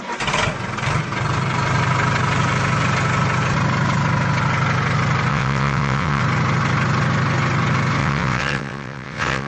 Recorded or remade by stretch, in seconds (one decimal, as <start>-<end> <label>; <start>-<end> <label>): 0.0-5.3 recorded; 5.3-6.2 remade; 6.2-8.0 recorded; 8.0-9.5 remade